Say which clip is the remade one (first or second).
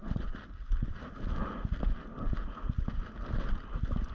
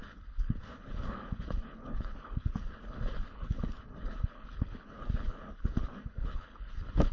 second